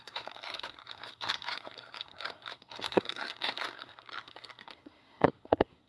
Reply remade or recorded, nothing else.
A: remade